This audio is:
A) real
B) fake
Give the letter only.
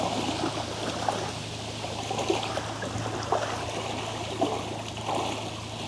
A